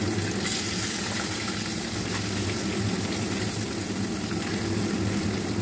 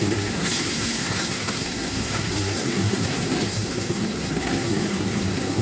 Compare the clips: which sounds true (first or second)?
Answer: first